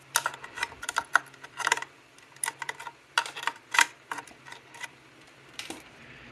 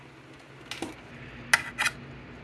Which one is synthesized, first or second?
first